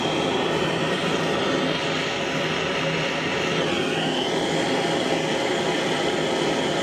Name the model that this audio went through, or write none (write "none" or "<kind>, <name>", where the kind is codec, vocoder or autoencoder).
none